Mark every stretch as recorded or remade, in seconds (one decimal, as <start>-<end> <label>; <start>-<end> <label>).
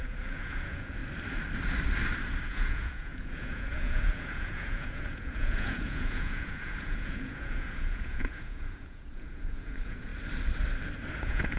0.0-1.0 remade; 1.0-2.5 recorded; 2.5-10.1 remade; 10.1-11.2 recorded; 11.2-11.6 remade